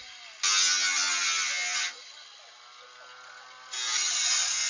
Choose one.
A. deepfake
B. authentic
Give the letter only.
B